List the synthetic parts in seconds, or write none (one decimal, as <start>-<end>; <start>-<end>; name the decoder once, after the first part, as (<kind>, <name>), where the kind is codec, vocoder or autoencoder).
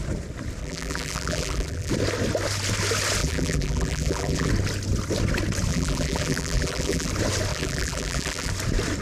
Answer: 0.6-1.9 (vocoder, BigVGAN v2); 3.2-4.5; 5.7-7.1; 7.5-8.5